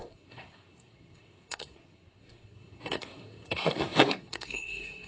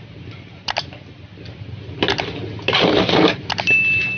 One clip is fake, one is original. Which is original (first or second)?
second